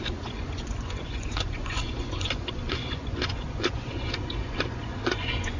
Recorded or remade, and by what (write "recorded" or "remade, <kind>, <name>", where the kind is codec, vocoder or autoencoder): remade, vocoder, Vocos